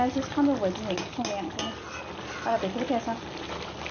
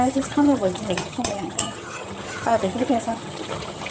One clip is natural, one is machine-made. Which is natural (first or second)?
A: first